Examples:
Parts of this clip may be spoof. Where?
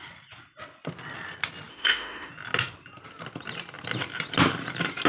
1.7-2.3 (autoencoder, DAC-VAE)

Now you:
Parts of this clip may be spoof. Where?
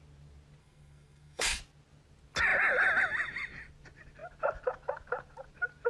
0.6-1.6 (codec, SNAC)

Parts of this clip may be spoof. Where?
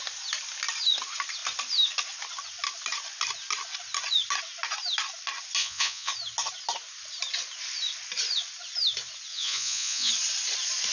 5.6-6.1 (vocoder, Vocos); 9.3-10.1